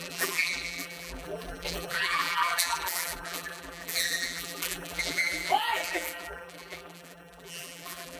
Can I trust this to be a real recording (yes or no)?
no